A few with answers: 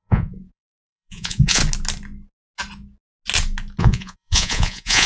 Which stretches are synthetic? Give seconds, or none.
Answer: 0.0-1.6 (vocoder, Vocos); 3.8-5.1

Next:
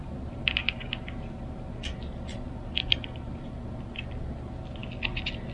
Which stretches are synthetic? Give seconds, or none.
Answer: none